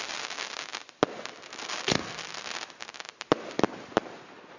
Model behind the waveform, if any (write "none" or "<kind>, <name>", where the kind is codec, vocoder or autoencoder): none